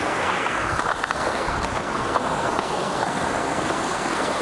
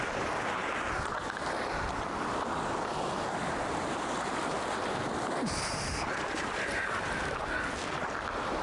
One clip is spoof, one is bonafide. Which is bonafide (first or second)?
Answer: second